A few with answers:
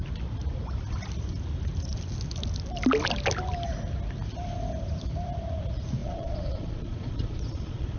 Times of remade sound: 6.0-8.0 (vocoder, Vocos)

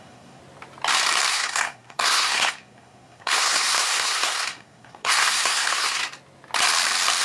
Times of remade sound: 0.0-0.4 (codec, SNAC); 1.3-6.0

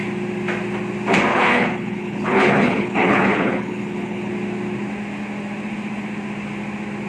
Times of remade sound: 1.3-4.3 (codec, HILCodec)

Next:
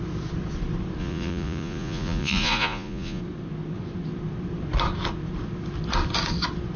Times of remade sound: 1.0-3.2 (vocoder, Vocos)

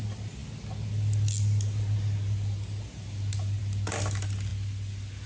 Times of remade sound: none

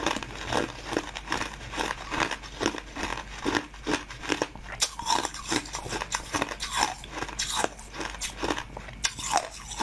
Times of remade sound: none

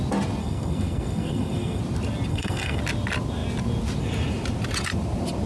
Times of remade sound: 0.4-1.8 (codec, SNAC); 2.3-2.8

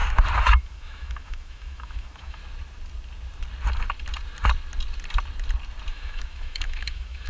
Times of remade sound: 0.6-2.4 (autoencoder, DAC-VAE); 5.9-7.3